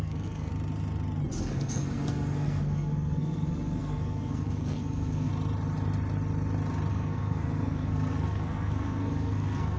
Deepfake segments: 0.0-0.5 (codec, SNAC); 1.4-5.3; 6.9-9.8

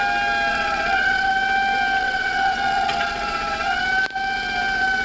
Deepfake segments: 0.5-1.3 (vocoder, WaveNeXt); 2.0-3.8

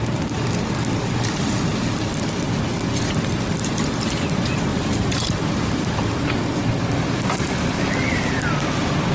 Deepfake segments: 4.7-6.3 (vocoder, BigVGAN v2)

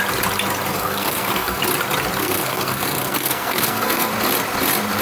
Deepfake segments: 0.7-1.6 (codec, SNAC); 2.2-4.1

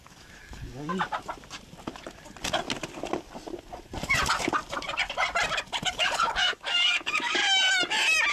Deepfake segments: 0.0-0.9 (codec, DAC); 5.9-7.4

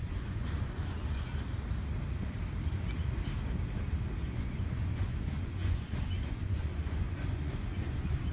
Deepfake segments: 0.0-1.3 (vocoder, Vocos); 4.2-8.3

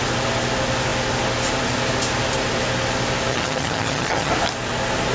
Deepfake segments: 3.3-4.3 (vocoder, HiFi-GAN)